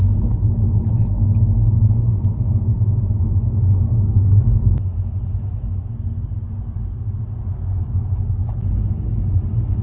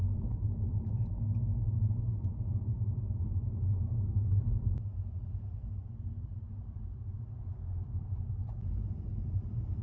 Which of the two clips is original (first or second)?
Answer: first